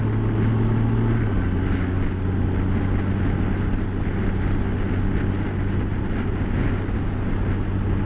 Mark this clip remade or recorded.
recorded